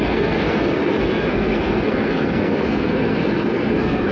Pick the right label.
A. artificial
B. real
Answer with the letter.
A